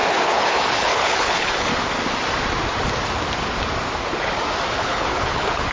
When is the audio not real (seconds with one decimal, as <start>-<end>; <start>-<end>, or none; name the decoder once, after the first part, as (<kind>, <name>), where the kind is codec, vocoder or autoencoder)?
0.0-1.7 (codec, HILCodec); 4.7-5.7